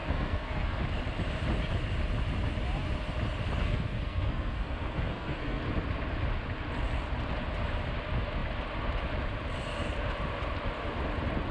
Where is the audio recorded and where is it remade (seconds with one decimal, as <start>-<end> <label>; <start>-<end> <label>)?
0.0-0.8 remade; 0.8-3.6 recorded; 3.6-5.6 remade; 5.6-11.5 recorded